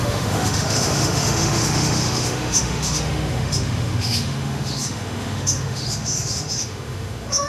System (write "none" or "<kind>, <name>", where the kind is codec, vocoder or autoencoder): autoencoder, DAC-VAE